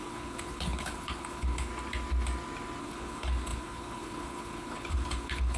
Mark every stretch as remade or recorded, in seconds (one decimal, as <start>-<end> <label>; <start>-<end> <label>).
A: 0.0-1.7 remade; 1.7-2.8 recorded; 2.8-5.6 remade